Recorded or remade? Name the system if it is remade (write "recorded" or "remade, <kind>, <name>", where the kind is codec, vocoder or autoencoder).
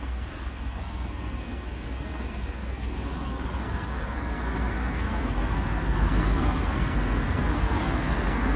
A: remade, codec, SNAC